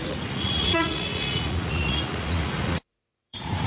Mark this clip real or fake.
fake